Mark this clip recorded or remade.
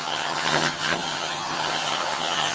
remade